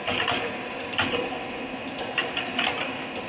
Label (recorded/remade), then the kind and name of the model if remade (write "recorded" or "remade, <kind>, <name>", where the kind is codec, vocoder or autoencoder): remade, vocoder, BigVGAN v2